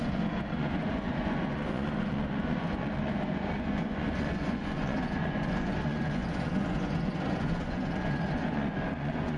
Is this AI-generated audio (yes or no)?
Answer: yes